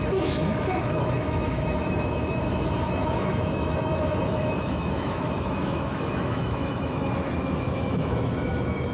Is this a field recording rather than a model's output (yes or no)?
no